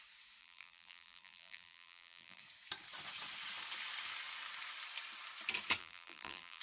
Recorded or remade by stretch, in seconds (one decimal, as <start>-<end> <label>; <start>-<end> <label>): 0.0-0.4 recorded; 0.4-2.4 remade; 2.4-5.8 recorded; 5.8-6.6 remade